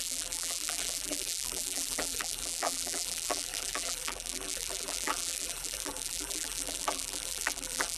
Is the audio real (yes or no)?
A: no